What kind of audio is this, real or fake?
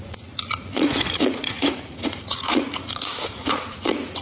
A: fake